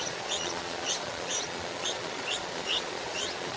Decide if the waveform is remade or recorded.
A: remade